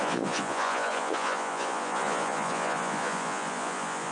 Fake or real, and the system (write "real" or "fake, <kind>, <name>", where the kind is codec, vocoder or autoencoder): fake, vocoder, Vocos